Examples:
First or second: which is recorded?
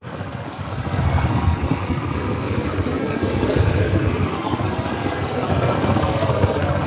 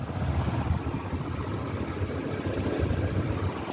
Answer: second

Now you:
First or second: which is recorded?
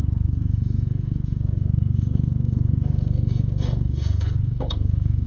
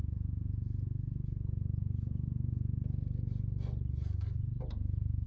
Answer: second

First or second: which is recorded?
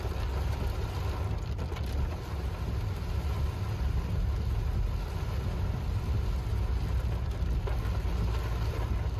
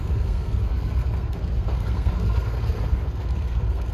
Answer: first